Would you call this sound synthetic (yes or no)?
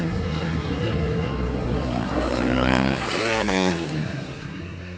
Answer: yes